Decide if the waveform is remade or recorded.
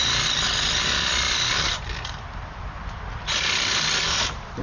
recorded